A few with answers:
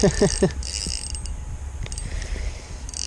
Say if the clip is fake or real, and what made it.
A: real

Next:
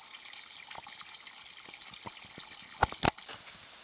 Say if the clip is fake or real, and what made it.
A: real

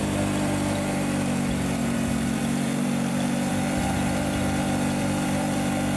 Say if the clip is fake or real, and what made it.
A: fake, vocoder, BigVGAN v2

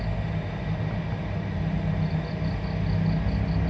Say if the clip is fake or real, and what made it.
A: real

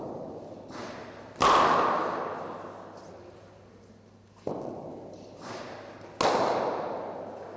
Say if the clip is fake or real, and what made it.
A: real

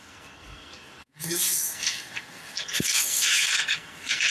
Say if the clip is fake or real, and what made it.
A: fake, codec, SNAC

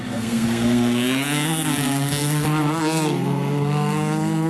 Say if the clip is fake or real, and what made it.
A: fake, codec, SNAC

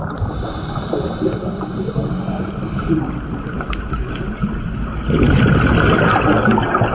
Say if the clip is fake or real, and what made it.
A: real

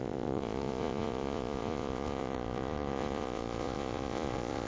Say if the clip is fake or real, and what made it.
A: fake, vocoder, Vocos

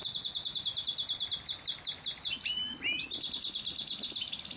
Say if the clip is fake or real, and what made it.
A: real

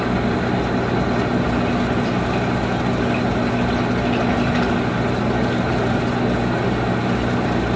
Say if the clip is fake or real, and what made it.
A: real